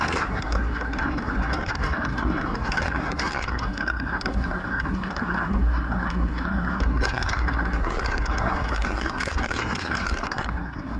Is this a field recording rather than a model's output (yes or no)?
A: no